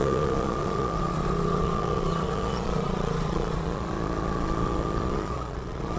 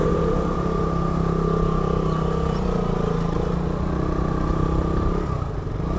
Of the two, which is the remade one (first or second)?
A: first